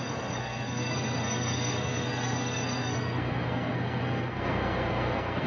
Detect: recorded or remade remade